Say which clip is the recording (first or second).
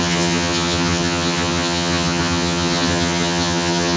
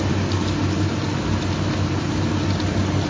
second